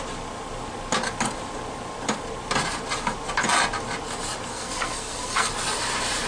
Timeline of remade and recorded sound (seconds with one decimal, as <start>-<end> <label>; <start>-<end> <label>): 0.0-4.5 recorded; 4.5-5.5 remade; 5.5-6.3 recorded